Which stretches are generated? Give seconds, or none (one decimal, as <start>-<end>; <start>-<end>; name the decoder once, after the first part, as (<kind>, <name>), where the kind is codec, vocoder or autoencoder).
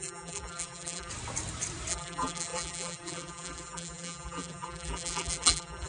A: 0.0-1.1 (vocoder, BigVGAN v2); 1.9-5.9